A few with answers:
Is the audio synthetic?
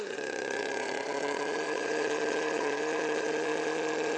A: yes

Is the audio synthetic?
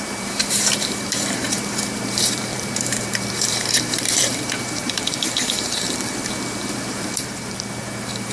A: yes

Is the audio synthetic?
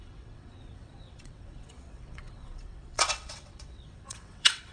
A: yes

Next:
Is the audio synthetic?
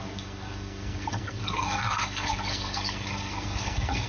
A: yes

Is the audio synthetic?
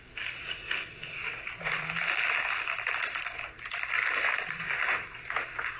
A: no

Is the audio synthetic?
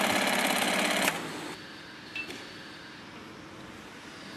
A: no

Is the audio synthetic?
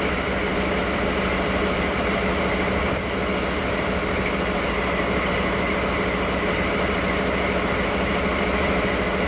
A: no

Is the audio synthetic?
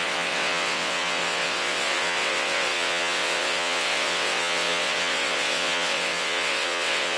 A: yes